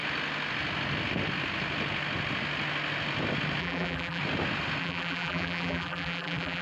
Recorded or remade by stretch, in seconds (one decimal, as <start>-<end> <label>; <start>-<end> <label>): 0.0-3.6 recorded; 3.6-4.2 remade; 4.2-4.8 recorded; 4.8-6.6 remade